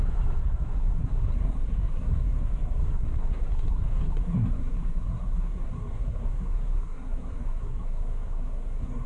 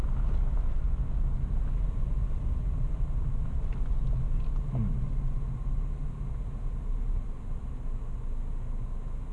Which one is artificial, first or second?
first